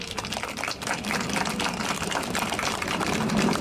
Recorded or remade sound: recorded